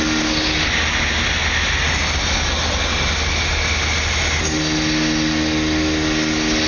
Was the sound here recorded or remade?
recorded